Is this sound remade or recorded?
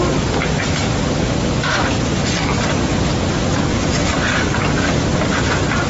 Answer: recorded